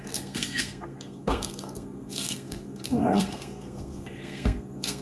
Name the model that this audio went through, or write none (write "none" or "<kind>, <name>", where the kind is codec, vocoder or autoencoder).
codec, SNAC